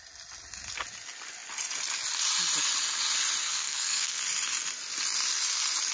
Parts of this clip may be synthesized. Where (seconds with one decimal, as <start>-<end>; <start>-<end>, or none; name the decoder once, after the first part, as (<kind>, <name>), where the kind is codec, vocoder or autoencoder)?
3.4-4.2 (codec, SNAC)